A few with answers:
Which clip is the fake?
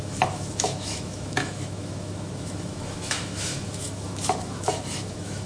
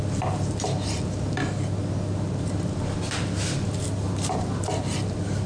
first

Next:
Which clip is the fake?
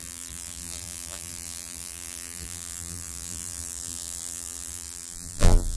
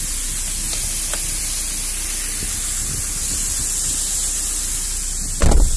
first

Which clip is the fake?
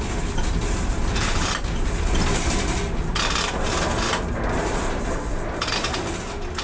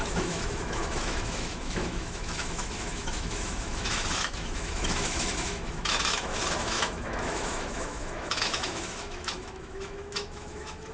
second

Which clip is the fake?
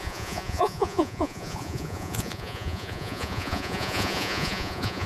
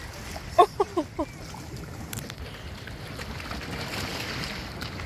first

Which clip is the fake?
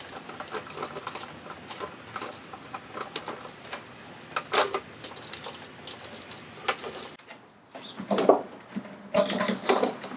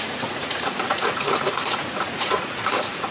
second